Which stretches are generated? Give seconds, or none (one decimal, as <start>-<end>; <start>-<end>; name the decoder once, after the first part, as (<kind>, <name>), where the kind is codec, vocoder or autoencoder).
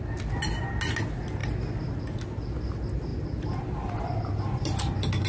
none